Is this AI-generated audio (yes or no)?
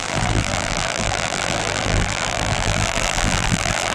yes